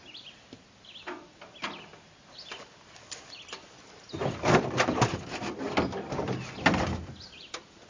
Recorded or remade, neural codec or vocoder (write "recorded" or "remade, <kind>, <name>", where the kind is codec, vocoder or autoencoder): recorded